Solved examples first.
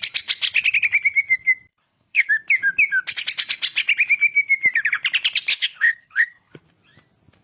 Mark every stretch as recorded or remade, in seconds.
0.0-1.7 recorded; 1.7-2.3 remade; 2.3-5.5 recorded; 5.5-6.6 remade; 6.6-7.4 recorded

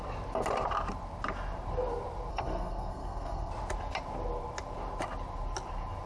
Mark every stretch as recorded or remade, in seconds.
0.0-2.3 recorded; 2.3-3.5 remade; 3.5-6.1 recorded

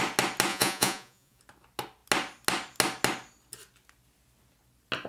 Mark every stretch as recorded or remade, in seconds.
0.0-0.5 recorded; 0.5-1.4 remade; 1.4-5.1 recorded

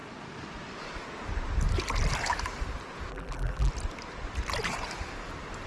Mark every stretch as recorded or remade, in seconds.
0.0-3.1 recorded; 3.1-3.7 remade; 3.7-5.7 recorded

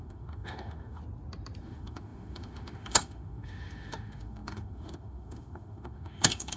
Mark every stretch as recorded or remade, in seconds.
0.0-1.0 remade; 1.0-1.6 recorded; 1.6-6.6 remade

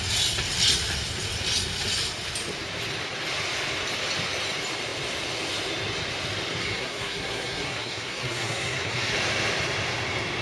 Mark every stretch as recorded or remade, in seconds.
0.0-6.6 recorded; 6.6-9.1 remade; 9.1-10.4 recorded